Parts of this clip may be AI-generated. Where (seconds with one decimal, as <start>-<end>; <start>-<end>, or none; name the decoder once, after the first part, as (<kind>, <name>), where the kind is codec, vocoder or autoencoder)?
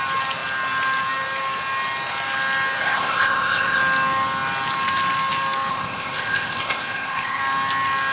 2.8-3.8 (codec, ZipCodec); 5.7-7.4